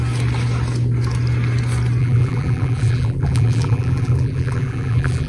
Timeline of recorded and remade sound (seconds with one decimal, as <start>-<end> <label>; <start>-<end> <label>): 0.0-2.0 recorded; 2.0-5.3 remade